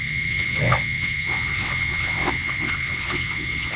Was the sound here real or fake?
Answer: fake